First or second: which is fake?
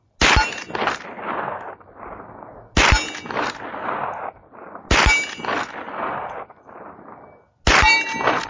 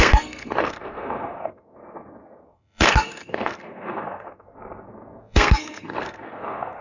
second